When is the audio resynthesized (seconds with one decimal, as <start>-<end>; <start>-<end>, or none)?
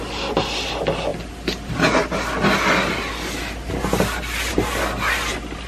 none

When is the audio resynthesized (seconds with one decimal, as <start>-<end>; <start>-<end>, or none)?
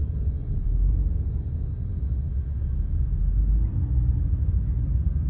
0.0-3.2; 3.7-4.4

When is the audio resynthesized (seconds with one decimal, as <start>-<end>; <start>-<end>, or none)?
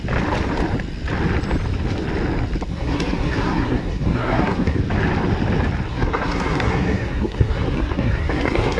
2.7-4.8; 5.9-8.8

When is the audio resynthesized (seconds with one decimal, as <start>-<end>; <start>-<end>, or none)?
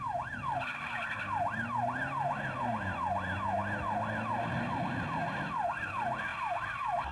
none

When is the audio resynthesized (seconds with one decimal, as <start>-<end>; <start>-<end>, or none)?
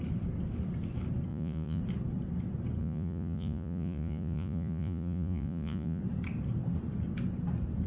1.3-1.8; 2.8-6.0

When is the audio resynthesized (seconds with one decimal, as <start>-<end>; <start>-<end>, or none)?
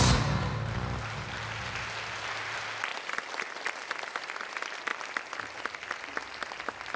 2.9-4.5